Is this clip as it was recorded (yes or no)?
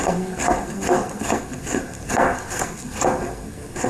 no